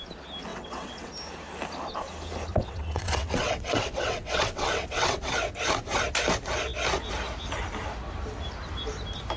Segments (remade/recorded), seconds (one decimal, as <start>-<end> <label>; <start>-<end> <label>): 0.0-0.5 recorded; 0.5-1.1 remade; 1.1-2.5 recorded; 2.5-5.3 remade; 5.3-9.4 recorded